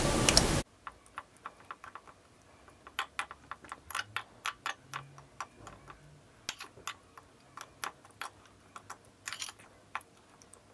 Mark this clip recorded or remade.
recorded